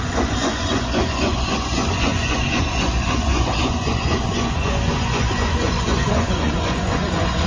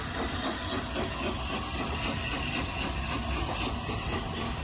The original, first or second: second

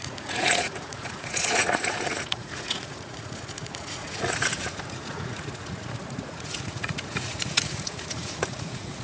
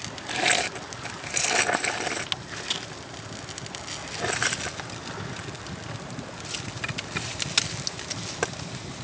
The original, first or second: second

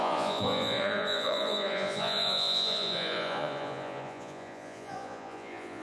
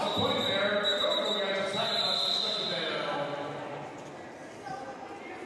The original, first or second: second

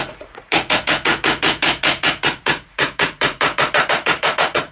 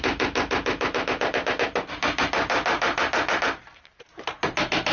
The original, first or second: second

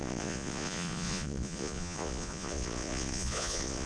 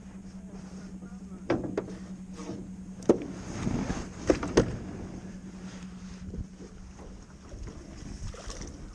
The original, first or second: second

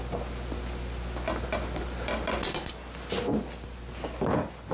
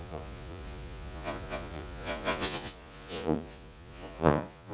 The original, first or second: first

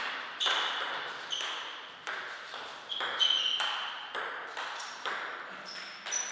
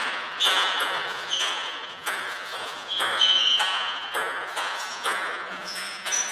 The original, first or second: first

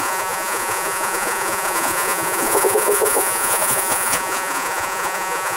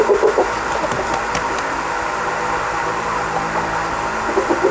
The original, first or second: second